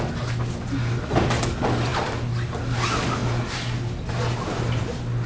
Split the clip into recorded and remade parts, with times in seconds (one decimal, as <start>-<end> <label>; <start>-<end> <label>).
0.0-5.3 recorded